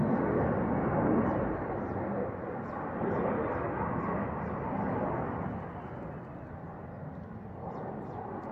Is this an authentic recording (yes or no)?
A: yes